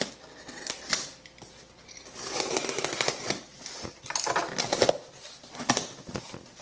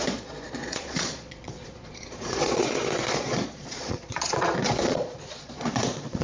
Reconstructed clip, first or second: second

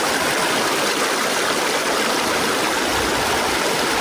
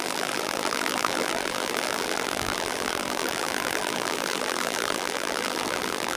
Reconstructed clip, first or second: second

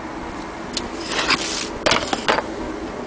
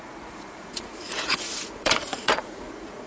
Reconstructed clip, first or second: second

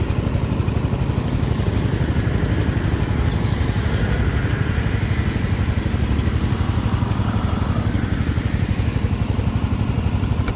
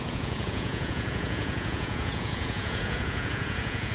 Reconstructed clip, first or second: second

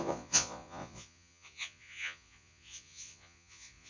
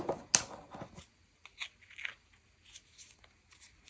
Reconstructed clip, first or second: first